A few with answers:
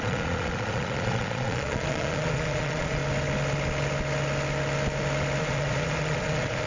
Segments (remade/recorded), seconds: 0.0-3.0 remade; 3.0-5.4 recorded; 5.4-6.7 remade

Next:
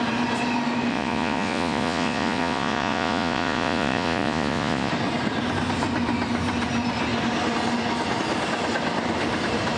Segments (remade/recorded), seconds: 0.0-0.9 recorded; 0.9-4.9 remade; 4.9-9.8 recorded

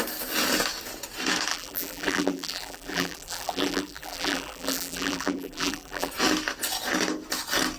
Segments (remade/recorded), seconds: 0.0-1.5 recorded; 1.5-6.1 remade; 6.1-7.8 recorded

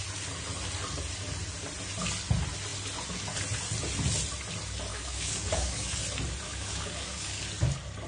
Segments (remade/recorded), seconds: 0.0-4.9 recorded; 4.9-6.0 remade; 6.0-6.5 recorded; 6.5-7.4 remade; 7.4-8.1 recorded

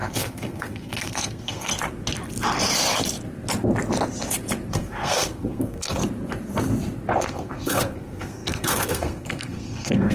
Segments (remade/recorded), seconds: 0.0-1.7 remade; 1.7-4.7 recorded; 4.7-6.0 remade; 6.0-7.2 recorded; 7.2-10.1 remade